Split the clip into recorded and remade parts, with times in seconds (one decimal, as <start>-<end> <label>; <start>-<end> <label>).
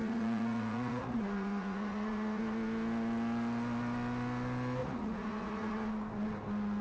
0.0-2.4 remade; 2.4-4.8 recorded; 4.8-5.9 remade; 5.9-6.8 recorded